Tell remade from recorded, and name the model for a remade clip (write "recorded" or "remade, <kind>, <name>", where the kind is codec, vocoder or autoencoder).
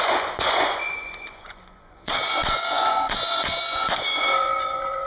remade, vocoder, Vocos